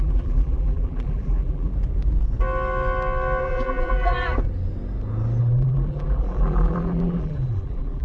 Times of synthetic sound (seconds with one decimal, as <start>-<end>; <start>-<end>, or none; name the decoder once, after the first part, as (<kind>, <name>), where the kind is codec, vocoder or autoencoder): 0.0-1.7 (vocoder, BigVGAN v2); 3.4-4.1; 5.4-8.0